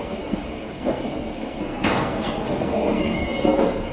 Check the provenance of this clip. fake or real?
fake